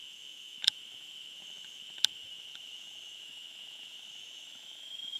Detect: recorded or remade remade